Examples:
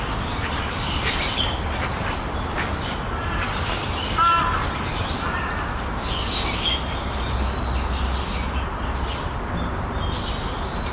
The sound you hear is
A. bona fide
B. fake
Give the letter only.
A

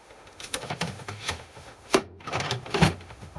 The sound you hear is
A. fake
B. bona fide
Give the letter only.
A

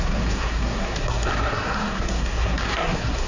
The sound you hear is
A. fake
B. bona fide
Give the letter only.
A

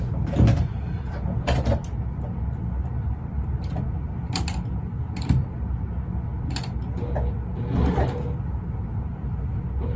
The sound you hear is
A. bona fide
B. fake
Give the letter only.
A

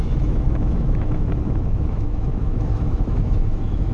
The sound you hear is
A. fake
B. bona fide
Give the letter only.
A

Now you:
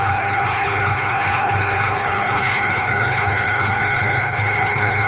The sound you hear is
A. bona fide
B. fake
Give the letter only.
B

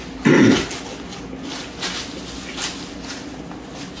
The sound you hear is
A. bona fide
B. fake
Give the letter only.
A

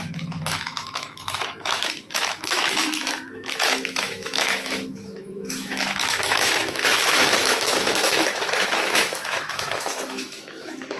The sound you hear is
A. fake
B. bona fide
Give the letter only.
A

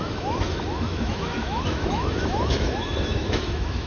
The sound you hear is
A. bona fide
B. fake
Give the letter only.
B